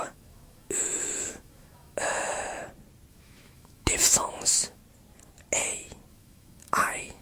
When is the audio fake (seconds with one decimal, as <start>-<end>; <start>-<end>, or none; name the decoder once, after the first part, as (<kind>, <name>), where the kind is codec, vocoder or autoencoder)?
0.0-2.6 (autoencoder, DAC-VAE); 3.1-4.8; 6.1-7.2